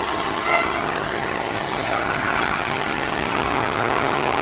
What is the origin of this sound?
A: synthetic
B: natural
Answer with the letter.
A